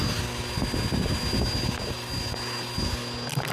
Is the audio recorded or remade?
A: recorded